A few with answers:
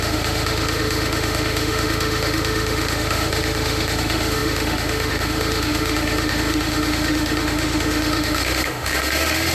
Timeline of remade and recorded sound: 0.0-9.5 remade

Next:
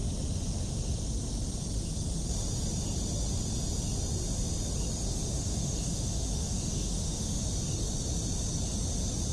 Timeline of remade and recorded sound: 0.0-5.0 recorded; 5.0-7.4 remade; 7.4-9.3 recorded

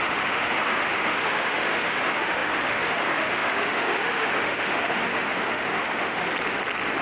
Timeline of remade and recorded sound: 0.0-6.2 remade; 6.2-7.0 recorded

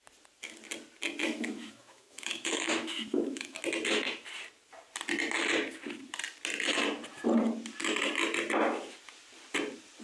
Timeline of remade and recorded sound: 0.0-1.2 recorded; 1.2-3.6 remade; 3.6-10.0 recorded

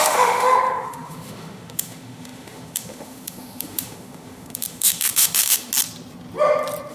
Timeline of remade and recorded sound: 0.0-5.7 remade; 5.7-6.9 recorded